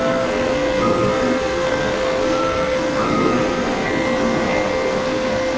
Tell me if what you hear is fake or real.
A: fake